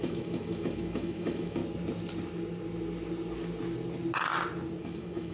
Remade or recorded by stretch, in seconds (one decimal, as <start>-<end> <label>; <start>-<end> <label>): 0.0-1.6 remade; 1.6-4.8 recorded; 4.8-5.3 remade